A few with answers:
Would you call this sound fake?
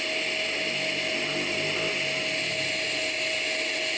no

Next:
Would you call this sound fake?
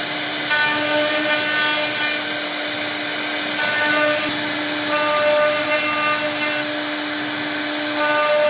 no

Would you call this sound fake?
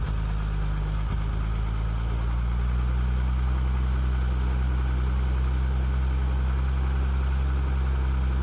no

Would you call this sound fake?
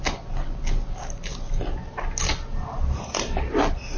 no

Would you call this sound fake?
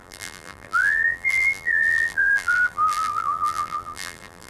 yes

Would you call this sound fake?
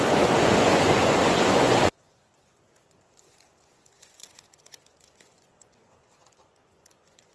yes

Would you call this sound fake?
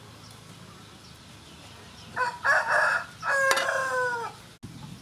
no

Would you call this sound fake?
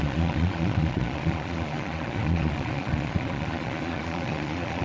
yes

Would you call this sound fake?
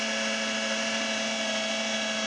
no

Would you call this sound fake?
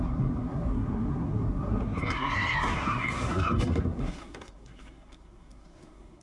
yes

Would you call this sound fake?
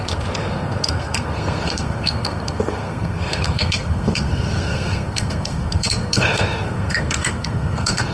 yes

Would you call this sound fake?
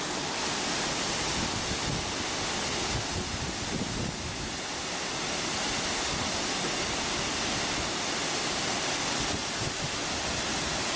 no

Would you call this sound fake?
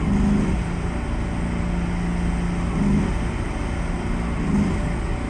no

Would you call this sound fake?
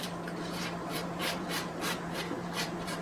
yes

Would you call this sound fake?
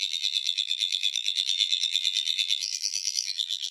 yes